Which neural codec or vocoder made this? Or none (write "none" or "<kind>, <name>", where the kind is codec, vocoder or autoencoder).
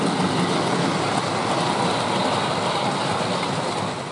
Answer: none